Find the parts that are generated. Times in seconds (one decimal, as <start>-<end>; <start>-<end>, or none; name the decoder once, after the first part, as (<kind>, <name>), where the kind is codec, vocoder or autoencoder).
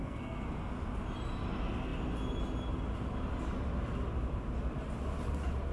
0.0-0.7 (codec, SNAC)